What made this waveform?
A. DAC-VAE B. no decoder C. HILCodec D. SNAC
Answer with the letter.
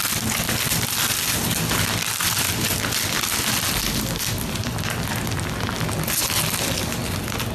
B